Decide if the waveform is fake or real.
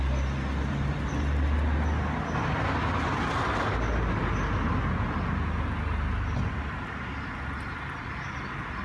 real